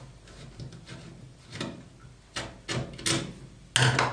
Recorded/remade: recorded